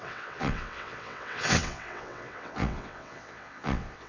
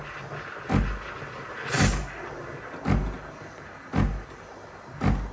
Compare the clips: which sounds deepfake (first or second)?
first